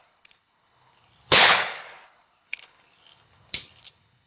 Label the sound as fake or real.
fake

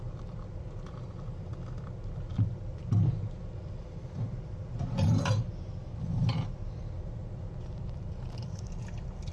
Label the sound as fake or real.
fake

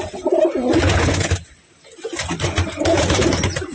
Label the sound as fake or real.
real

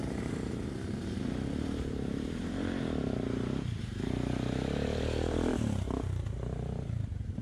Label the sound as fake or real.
fake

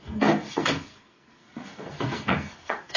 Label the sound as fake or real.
fake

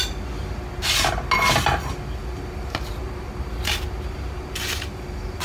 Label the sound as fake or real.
real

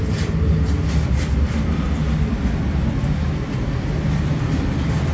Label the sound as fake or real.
real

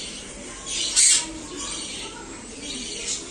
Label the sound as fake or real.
real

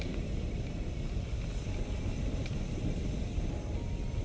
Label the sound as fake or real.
real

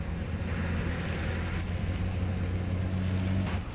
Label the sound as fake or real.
real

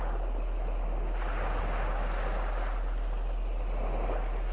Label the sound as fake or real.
real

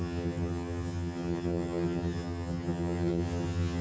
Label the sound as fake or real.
fake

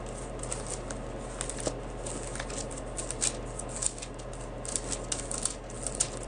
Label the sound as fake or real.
real